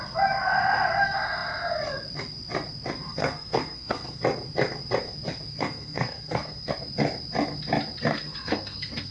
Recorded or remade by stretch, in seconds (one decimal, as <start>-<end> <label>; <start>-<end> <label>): 0.0-3.1 recorded; 3.1-4.2 remade; 4.2-5.5 recorded; 5.5-6.7 remade; 6.7-8.1 recorded; 8.1-9.1 remade